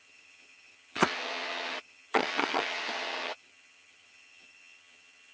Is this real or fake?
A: fake